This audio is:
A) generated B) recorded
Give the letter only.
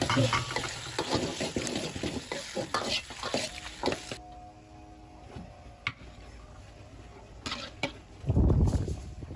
B